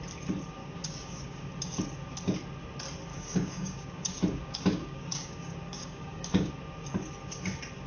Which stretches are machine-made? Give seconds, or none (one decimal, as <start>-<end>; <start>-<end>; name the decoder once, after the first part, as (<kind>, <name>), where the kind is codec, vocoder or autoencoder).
0.6-1.5 (codec, DAC); 3.1-6.5